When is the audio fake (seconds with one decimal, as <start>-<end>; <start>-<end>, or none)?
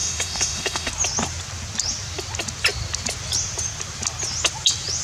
0.0-0.9